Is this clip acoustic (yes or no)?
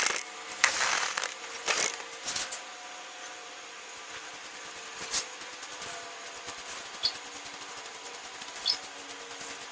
yes